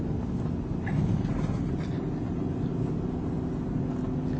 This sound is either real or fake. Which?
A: real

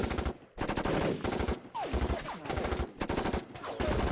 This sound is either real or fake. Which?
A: real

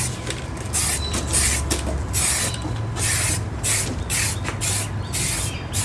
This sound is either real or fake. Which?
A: real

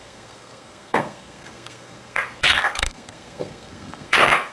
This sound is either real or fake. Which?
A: fake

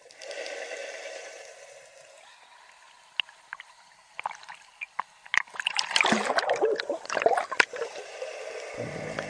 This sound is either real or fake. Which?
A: real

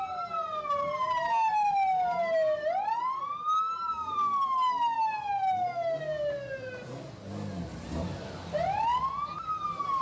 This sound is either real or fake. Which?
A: real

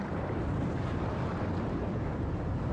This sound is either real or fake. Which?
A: real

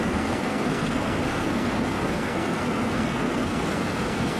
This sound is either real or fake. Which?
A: fake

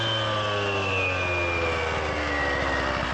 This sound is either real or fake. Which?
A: real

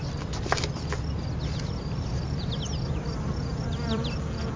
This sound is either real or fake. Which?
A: real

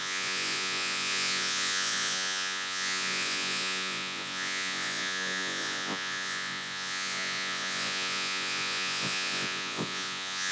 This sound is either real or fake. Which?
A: fake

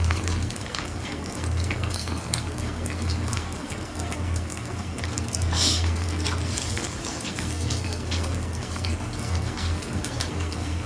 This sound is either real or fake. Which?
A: fake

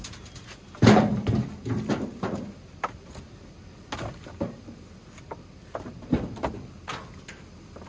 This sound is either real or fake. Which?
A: real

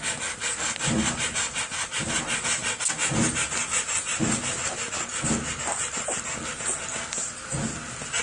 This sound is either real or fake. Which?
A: real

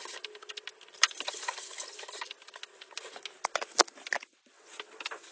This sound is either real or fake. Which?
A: real